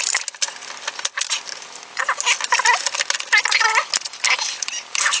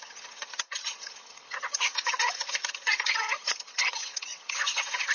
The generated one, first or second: second